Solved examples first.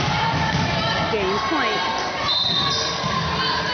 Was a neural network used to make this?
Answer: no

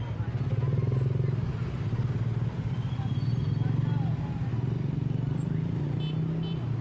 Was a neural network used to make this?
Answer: no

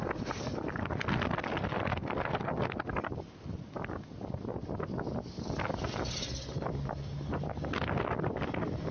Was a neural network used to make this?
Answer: no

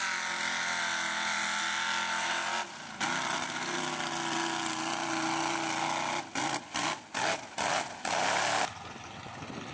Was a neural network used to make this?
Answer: no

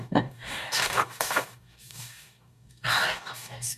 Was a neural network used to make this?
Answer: yes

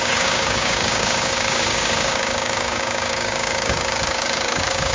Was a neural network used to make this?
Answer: yes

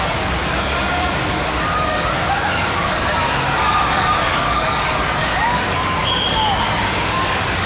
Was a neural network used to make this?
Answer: yes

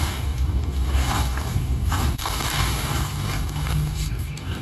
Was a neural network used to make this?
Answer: yes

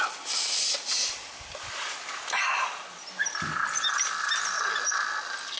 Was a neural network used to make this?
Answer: no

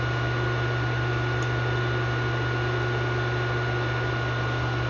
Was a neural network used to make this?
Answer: no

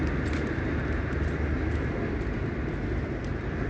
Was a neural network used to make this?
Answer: no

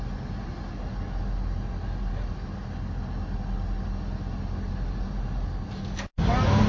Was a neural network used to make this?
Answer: no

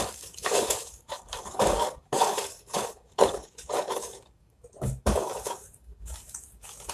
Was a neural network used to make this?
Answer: yes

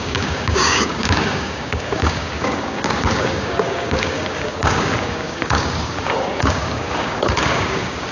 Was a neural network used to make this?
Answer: yes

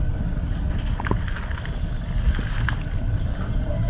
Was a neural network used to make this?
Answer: no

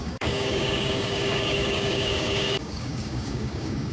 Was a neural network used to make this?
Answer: yes